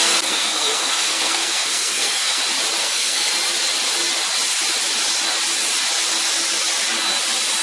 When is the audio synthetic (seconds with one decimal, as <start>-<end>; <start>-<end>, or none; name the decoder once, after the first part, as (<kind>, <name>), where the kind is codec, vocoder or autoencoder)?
0.0-2.4 (codec, SNAC); 2.8-3.3